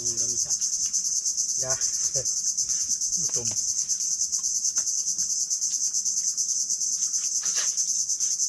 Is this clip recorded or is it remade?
recorded